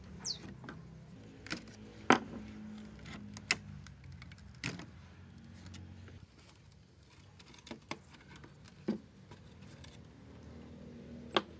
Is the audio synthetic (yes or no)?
no